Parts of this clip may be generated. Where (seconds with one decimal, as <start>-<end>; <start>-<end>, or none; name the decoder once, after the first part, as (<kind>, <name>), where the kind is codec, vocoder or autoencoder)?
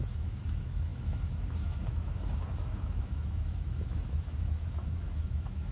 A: 0.0-5.7 (autoencoder, DAC-VAE)